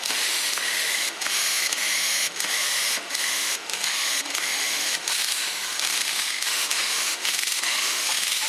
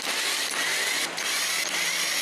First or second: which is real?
second